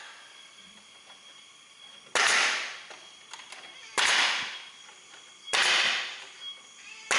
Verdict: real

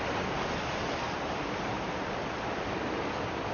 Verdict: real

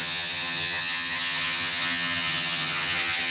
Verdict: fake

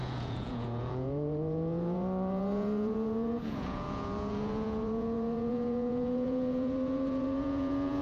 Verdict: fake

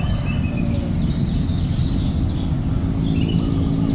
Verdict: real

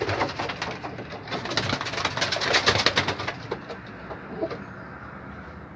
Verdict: real